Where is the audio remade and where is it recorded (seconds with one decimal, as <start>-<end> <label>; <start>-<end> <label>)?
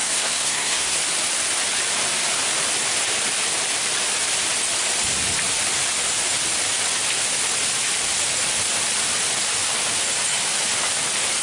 0.0-1.0 remade; 1.0-11.4 recorded